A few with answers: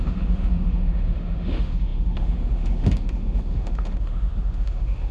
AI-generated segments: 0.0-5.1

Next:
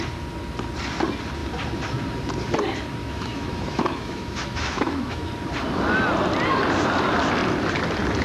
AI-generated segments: 3.0-5.3

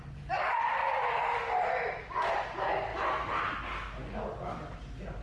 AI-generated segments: none

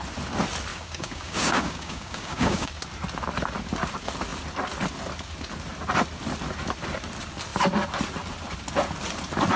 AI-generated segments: 0.7-2.7

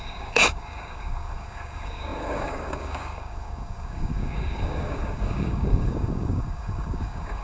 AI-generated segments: 0.0-7.4

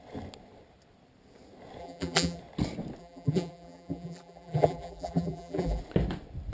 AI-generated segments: 1.8-2.4; 3.0-5.8

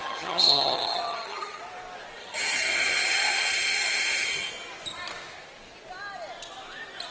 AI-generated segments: 0.0-1.6; 2.2-4.5